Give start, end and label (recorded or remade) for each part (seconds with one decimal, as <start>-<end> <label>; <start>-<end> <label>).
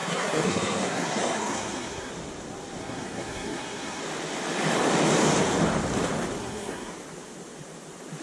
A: 0.0-2.1 remade; 2.1-2.8 recorded; 2.8-4.0 remade; 4.0-6.4 recorded; 6.4-6.9 remade; 6.9-8.2 recorded